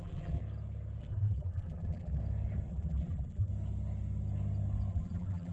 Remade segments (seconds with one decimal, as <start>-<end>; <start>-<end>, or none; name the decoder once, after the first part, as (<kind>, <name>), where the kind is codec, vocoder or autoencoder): 0.0-0.4 (vocoder, BigVGAN v2); 1.0-2.2; 2.7-3.5; 4.9-5.5